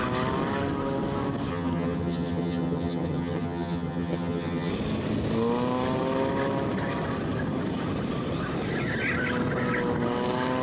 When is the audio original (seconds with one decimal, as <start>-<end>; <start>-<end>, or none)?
0.0-1.5; 4.7-10.6